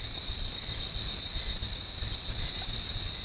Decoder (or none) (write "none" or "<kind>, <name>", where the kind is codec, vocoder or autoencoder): none